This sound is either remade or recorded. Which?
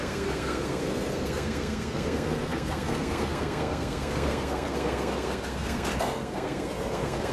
remade